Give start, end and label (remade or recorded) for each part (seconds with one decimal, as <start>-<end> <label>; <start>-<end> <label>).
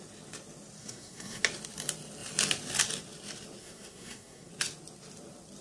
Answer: 0.0-0.8 recorded; 0.8-1.4 remade; 1.4-3.6 recorded; 3.6-4.5 remade; 4.5-5.6 recorded